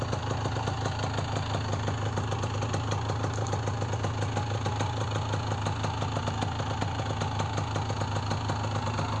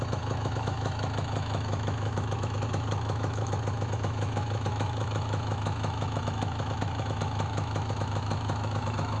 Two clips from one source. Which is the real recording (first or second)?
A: first